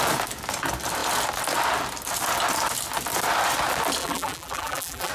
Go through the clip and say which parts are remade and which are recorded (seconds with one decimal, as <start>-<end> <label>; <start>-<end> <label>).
0.0-4.0 recorded; 4.0-5.1 remade